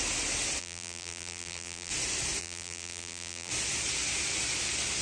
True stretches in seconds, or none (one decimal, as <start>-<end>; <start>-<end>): 0.0-0.6; 1.9-2.4; 3.5-5.0